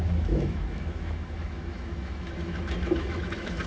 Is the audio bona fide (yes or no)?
no